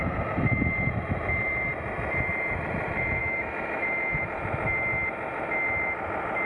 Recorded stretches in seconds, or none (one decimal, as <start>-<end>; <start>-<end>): 0.0-3.2; 3.8-6.5